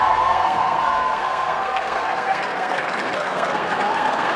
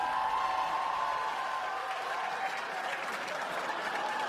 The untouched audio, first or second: second